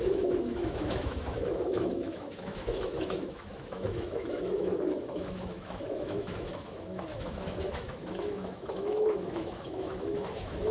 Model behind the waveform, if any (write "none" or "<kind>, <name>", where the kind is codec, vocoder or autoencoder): autoencoder, DAC-VAE